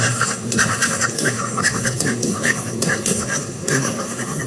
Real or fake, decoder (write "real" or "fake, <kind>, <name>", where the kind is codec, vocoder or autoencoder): fake, codec, SNAC